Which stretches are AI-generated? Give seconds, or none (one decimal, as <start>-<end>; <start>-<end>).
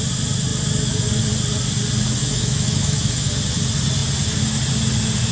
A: 2.2-3.3